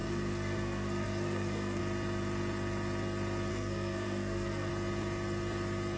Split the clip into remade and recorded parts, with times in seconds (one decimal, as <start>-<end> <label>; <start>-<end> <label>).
0.0-1.8 remade; 1.8-3.5 recorded; 3.5-4.7 remade; 4.7-6.0 recorded